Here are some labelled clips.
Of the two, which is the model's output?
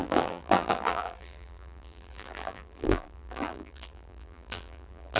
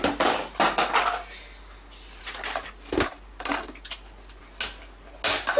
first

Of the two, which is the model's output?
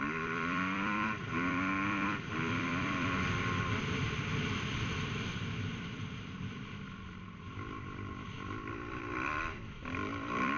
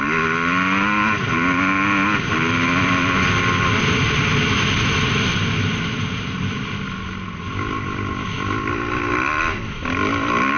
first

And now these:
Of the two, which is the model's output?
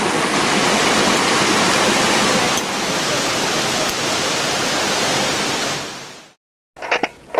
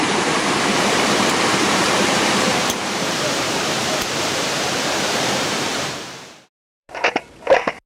second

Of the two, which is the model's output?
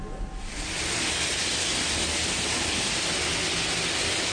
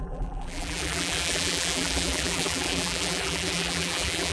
second